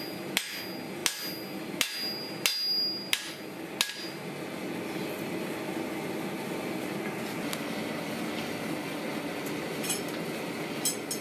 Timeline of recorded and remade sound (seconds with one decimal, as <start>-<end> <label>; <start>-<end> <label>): 0.0-11.2 recorded